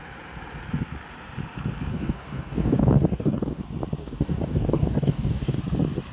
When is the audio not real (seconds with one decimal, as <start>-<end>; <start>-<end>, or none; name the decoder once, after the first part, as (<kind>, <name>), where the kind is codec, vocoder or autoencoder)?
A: 1.9-3.6 (codec, DAC); 4.0-5.6